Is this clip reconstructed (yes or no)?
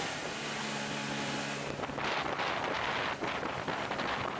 no